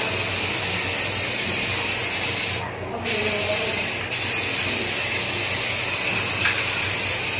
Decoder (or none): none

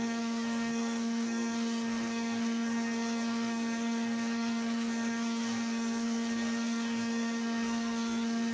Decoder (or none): codec, SNAC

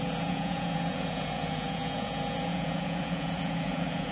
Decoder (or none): vocoder, Vocos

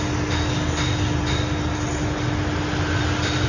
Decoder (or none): none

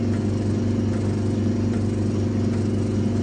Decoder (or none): none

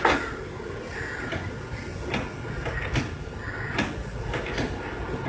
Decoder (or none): none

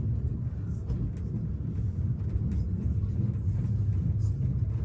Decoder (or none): none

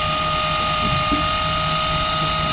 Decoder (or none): none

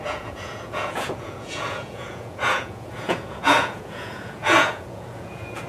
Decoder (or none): vocoder, Vocos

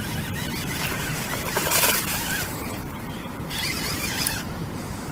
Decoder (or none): vocoder, BigVGAN v2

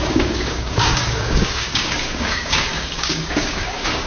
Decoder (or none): codec, DAC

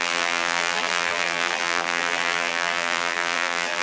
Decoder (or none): vocoder, BigVGAN v2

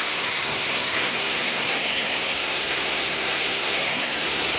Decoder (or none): codec, SNAC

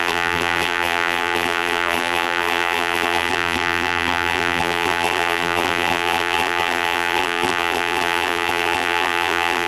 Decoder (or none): vocoder, BigVGAN v2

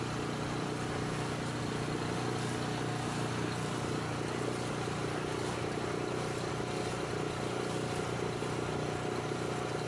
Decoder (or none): none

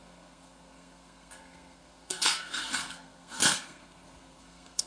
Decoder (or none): codec, SNAC